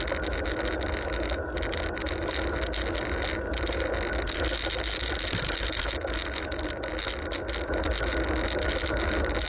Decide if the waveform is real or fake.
real